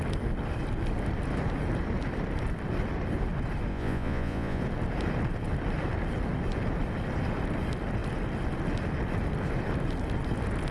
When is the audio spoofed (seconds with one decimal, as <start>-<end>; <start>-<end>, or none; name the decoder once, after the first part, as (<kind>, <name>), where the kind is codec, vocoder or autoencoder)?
3.7-4.6 (vocoder, Vocos)